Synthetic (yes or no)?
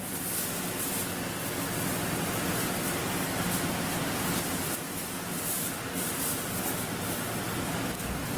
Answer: no